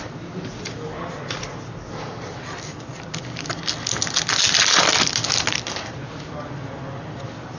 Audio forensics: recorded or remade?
recorded